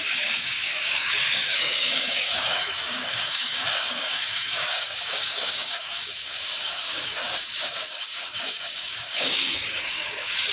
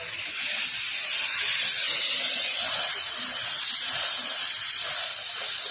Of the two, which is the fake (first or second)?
first